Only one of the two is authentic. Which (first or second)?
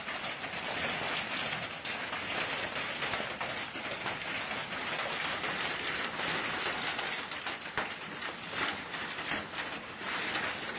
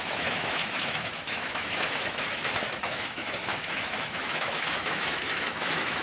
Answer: first